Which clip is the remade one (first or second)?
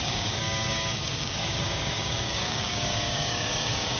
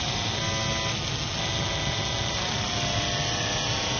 first